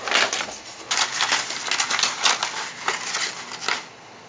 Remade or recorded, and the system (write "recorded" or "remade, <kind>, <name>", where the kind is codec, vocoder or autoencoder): recorded